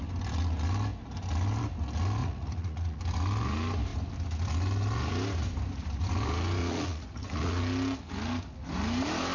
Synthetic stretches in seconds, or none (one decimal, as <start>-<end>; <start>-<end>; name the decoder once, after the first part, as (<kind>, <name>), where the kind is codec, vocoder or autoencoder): 2.2-3.0 (vocoder, Vocos); 6.6-7.6